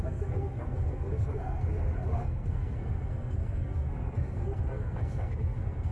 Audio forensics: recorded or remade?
remade